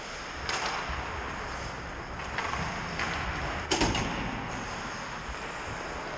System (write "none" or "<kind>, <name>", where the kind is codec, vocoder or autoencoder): none